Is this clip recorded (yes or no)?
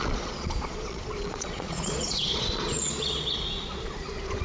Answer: no